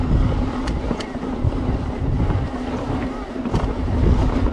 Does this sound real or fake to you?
real